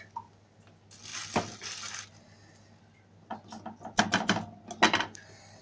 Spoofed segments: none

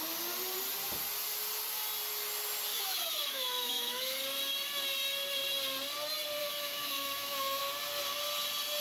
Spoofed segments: 2.7-4.2 (autoencoder, DAC-VAE); 6.4-7.6

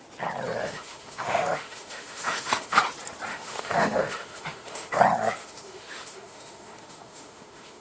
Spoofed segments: 0.6-2.8 (autoencoder, DAC-VAE); 3.3-5.0; 5.4-7.8

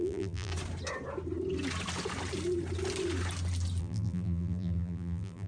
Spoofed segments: 0.0-0.5 (vocoder, BigVGAN v2); 3.8-5.5

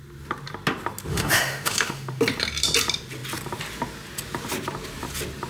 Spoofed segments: 1.1-2.2 (autoencoder, DAC-VAE)

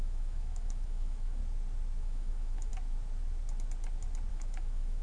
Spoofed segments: 0.0-1.4 (autoencoder, DAC-VAE); 2.0-2.7; 4.3-5.0